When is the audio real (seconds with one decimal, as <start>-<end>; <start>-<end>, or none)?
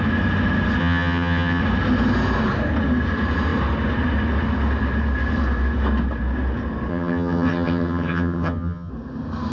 0.0-0.8; 1.6-6.9; 8.9-9.5